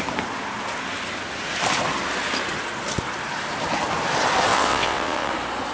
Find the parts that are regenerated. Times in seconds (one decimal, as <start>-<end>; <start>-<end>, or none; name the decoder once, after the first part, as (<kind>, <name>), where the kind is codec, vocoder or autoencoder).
4.5-5.3 (vocoder, WaveNeXt)